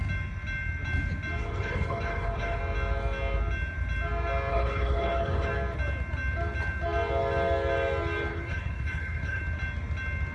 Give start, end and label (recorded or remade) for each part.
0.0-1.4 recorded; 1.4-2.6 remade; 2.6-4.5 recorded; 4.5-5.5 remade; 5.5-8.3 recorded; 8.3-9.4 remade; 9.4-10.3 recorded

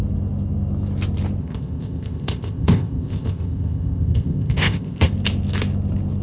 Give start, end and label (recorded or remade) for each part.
0.0-1.4 recorded; 1.4-5.1 remade; 5.1-6.2 recorded

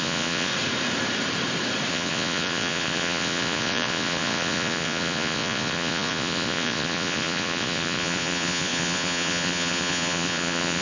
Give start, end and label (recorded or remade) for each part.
0.0-0.5 remade; 0.5-1.9 recorded; 1.9-10.8 remade

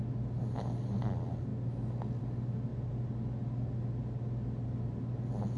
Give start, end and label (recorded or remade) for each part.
0.0-5.6 recorded

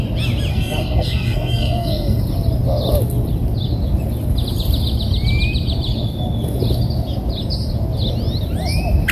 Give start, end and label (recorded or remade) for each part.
0.0-0.5 recorded; 0.5-2.2 remade; 2.2-9.1 recorded

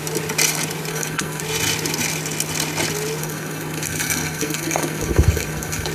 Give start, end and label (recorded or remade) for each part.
0.0-0.9 recorded; 0.9-1.4 remade; 1.4-3.2 recorded; 3.2-5.9 remade